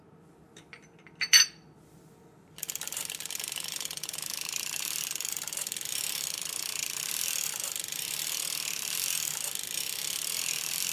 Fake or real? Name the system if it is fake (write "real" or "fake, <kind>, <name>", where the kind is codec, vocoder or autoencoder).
fake, vocoder, BigVGAN v2